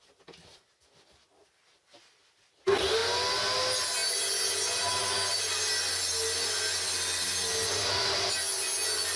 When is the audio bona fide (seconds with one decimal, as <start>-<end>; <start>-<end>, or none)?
0.0-9.2

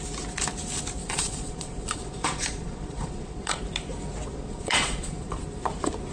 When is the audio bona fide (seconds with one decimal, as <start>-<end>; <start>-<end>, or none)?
0.0-1.0; 3.6-4.3; 5.4-6.1

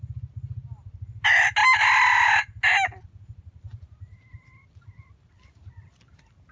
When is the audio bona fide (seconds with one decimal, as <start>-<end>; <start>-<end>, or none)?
0.0-6.5

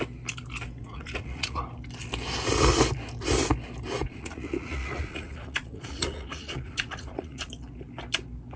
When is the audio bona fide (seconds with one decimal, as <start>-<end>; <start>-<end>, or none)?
0.0-0.8; 1.6-4.0; 7.5-8.6

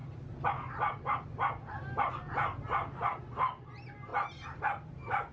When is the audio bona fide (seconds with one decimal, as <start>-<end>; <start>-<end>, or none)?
0.0-5.3

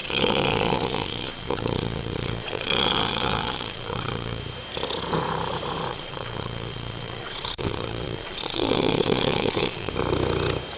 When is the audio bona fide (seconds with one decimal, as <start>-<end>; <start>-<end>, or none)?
4.4-5.9; 9.9-10.8

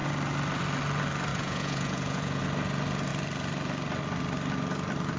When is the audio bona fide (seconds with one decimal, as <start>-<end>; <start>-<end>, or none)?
0.0-1.3; 2.4-5.2